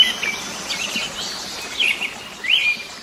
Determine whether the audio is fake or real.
real